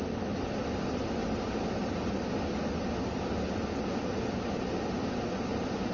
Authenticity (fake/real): real